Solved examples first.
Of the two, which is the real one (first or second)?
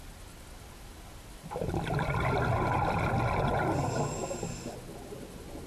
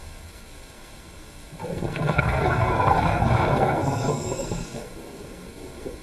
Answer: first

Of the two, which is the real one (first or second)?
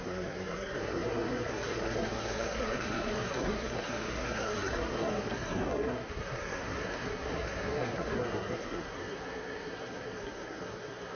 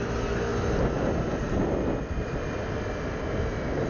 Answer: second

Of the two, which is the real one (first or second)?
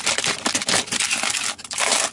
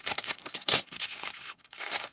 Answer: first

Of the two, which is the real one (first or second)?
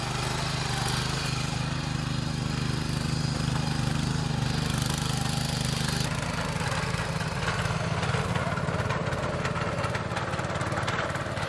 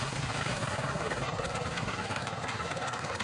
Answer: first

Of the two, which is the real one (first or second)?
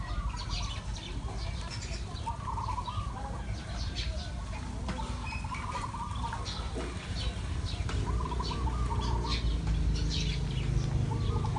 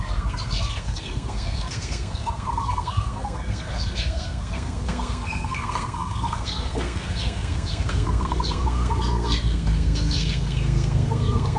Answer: first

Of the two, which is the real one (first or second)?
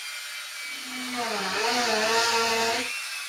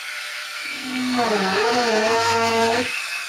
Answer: first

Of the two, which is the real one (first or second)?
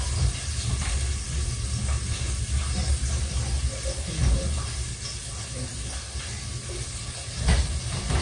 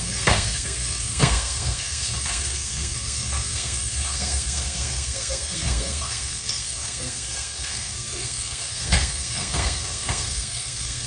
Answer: first